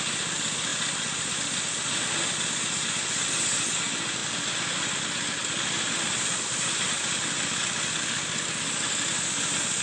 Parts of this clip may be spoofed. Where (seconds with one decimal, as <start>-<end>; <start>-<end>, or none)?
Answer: 4.2-5.0